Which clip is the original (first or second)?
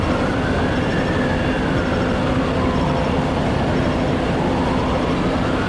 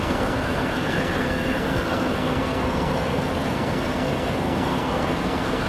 first